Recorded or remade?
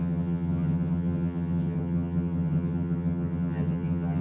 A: remade